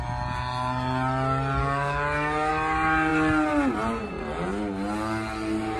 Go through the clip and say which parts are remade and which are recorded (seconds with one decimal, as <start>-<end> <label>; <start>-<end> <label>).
0.0-1.6 recorded; 1.6-2.5 remade; 2.5-5.8 recorded